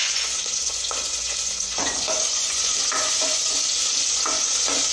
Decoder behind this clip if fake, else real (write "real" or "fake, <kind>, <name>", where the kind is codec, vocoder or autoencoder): fake, vocoder, Vocos